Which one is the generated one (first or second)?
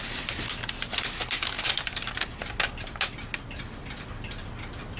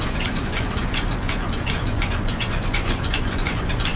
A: second